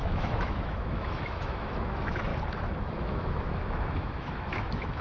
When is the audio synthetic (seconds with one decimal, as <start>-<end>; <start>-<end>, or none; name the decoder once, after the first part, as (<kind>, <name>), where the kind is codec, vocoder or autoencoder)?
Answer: 0.0-2.3 (autoencoder, DAC-VAE); 2.8-5.0